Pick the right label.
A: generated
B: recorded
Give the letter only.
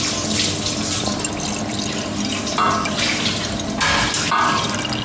B